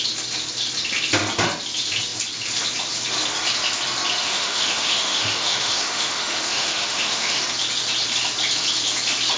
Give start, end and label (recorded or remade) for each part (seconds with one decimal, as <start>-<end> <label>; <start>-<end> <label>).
0.0-4.2 recorded; 4.2-7.4 remade; 7.4-9.4 recorded